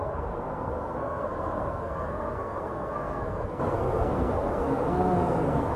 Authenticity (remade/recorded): remade